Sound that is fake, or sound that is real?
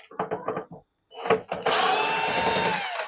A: real